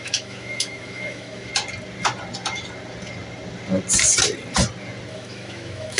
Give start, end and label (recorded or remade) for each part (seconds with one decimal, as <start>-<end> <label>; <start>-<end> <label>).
0.0-1.5 remade; 1.5-5.1 recorded; 5.1-6.0 remade